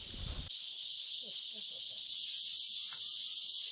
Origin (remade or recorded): recorded